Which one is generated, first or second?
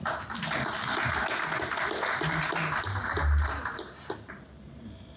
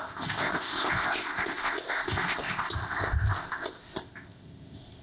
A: second